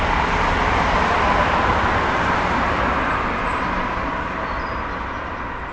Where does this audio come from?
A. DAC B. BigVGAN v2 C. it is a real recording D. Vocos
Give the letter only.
C